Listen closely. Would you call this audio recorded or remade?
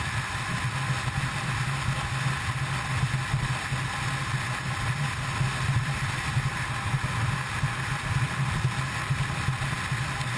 recorded